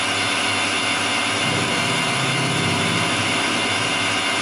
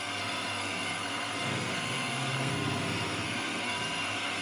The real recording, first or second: first